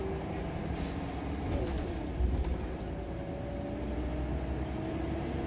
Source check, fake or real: real